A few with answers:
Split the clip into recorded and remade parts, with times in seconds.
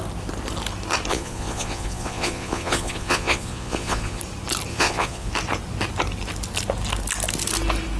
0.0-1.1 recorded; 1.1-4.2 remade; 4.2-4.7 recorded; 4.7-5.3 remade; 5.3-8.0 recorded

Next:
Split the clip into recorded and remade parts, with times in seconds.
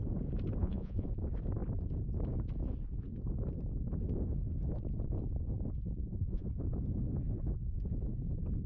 0.0-0.6 recorded; 0.6-1.1 remade; 1.1-6.0 recorded; 6.0-6.5 remade; 6.5-8.7 recorded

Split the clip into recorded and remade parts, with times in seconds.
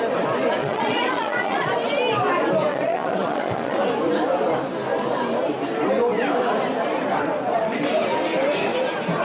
0.0-0.6 recorded; 0.6-1.7 remade; 1.7-2.7 recorded; 2.7-3.8 remade; 3.8-9.2 recorded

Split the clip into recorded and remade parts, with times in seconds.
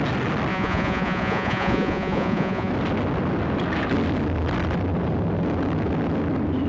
0.0-0.5 recorded; 0.5-2.7 remade; 2.7-6.7 recorded